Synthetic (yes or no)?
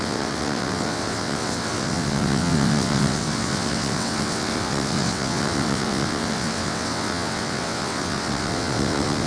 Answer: yes